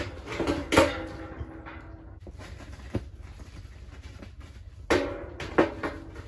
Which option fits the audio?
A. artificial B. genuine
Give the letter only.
B